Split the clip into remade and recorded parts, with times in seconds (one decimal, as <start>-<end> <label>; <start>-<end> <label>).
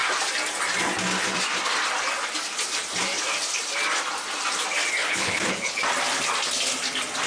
0.0-5.0 recorded; 5.0-5.8 remade; 5.8-7.3 recorded